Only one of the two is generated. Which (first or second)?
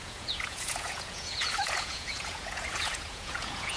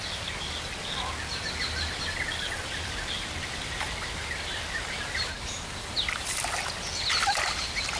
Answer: first